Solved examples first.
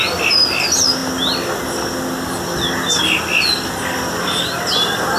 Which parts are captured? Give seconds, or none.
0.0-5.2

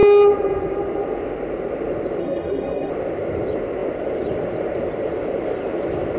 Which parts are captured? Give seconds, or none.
0.0-2.2; 2.9-6.2